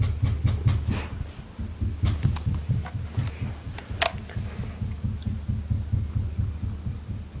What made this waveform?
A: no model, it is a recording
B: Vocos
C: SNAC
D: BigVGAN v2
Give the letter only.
A